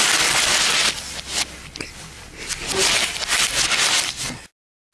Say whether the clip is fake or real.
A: real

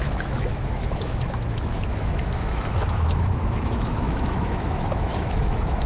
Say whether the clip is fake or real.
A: fake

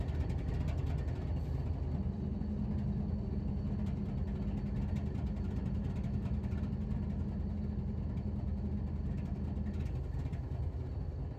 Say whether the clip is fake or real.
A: real